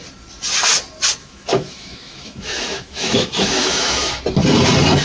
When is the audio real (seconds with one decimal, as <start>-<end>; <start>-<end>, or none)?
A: 0.0-1.2; 4.2-5.0